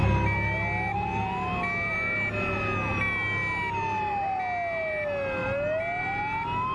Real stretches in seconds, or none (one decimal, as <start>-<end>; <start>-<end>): 0.0-6.7